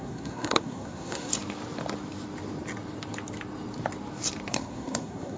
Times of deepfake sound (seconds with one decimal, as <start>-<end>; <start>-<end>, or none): 0.0-1.3; 4.5-5.4

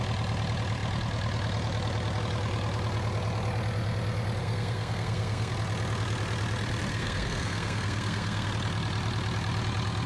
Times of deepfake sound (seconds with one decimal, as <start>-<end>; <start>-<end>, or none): 4.4-5.5; 6.9-8.5